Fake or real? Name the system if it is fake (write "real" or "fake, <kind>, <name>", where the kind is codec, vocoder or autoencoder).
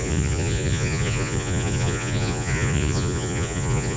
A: fake, vocoder, Vocos